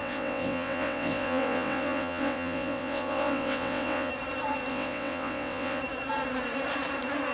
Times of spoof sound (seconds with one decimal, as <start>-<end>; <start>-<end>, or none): 0.0-4.1; 4.7-5.8